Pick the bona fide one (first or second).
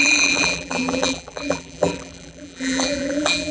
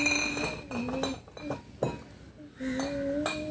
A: second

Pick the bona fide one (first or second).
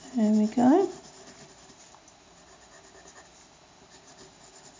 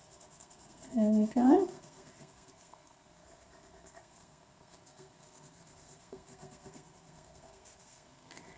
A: first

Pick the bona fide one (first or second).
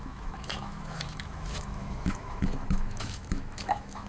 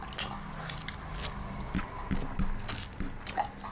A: second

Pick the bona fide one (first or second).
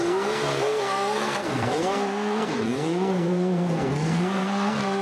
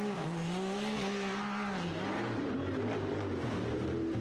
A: second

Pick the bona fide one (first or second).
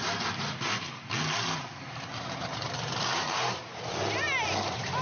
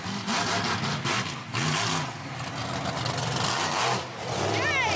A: second